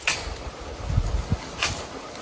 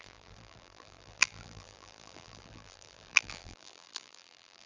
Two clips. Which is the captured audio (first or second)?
first